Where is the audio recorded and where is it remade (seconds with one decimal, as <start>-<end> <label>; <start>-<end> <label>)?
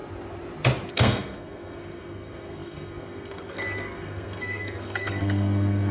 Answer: 0.0-0.9 recorded; 0.9-5.9 remade